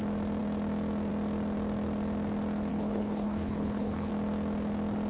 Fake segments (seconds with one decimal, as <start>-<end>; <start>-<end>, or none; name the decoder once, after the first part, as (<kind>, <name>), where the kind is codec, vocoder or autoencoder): 2.7-4.1 (codec, HILCodec)